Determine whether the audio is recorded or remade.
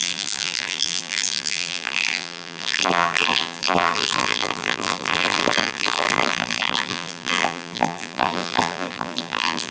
remade